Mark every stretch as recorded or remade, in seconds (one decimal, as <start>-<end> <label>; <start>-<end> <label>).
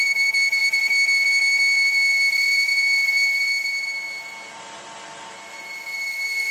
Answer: 0.0-2.7 recorded; 2.7-3.8 remade; 3.8-6.5 recorded